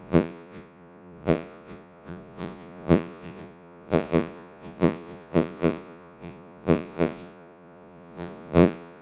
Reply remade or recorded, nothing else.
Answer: remade